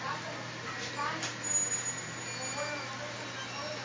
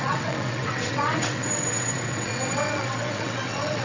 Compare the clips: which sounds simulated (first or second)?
second